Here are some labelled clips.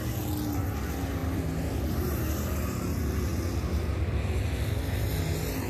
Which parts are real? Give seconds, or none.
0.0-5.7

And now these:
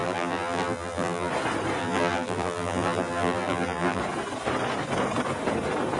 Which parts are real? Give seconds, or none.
1.3-1.8; 4.0-6.0

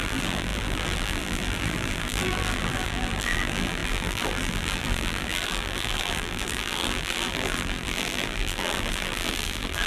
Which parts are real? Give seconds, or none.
none

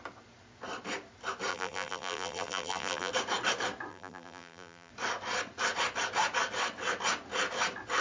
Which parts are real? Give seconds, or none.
0.0-1.5; 3.1-3.9; 4.9-8.0